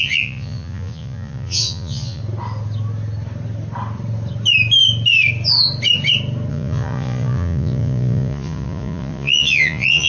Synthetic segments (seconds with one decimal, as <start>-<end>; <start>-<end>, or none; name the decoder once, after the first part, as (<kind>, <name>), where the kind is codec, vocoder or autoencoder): 0.0-2.2 (vocoder, Vocos); 6.5-10.1